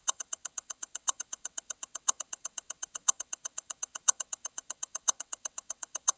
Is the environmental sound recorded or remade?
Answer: remade